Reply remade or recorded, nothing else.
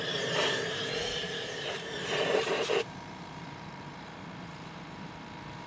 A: remade